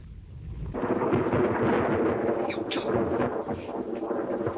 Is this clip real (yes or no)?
yes